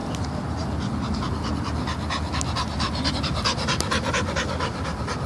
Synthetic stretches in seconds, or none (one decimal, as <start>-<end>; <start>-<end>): none